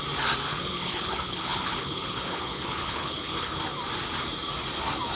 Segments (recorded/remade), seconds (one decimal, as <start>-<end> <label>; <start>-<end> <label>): 0.0-0.5 recorded; 0.5-3.6 remade; 3.6-5.2 recorded